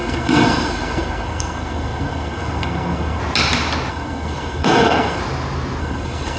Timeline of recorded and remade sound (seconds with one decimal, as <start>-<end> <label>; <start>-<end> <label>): 0.0-3.2 remade; 3.2-3.9 recorded; 3.9-5.2 remade; 5.2-5.8 recorded; 5.8-6.4 remade